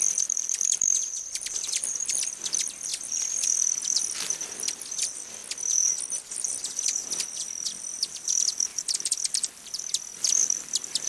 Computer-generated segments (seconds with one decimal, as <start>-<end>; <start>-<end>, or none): 0.0-2.9; 5.0-5.4; 6.3-7.0; 7.7-11.1